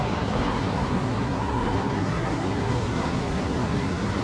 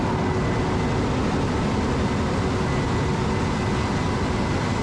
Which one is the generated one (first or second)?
first